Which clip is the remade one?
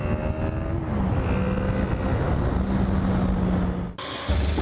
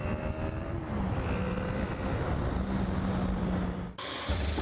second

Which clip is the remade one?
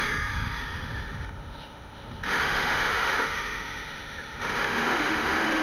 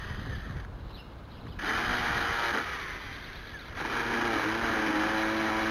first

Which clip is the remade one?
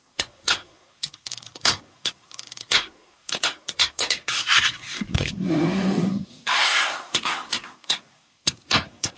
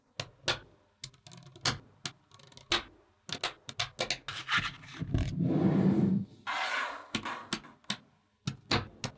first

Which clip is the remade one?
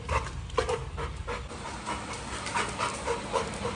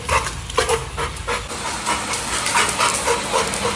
first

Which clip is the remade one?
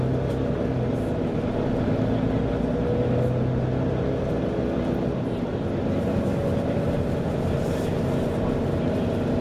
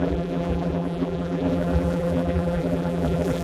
second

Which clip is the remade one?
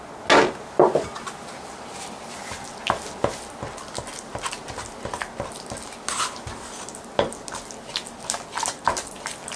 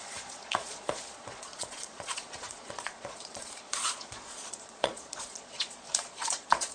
second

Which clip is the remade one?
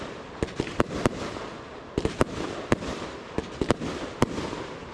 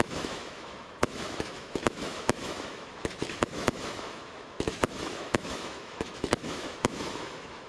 second